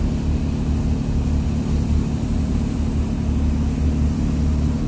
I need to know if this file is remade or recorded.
recorded